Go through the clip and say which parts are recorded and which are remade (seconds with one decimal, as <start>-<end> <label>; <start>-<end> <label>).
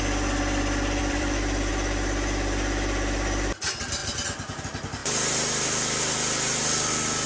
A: 0.0-1.0 recorded; 1.0-1.7 remade; 1.7-7.3 recorded